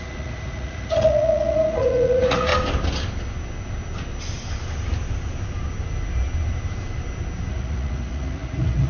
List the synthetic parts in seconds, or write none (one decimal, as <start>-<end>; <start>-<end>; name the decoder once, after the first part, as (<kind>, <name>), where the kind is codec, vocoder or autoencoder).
0.0-2.5 (vocoder, Vocos); 7.5-8.9